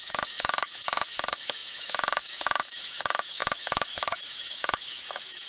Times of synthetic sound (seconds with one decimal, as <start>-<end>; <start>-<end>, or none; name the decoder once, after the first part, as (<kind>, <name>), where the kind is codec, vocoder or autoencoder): 0.0-5.5 (autoencoder, DAC-VAE)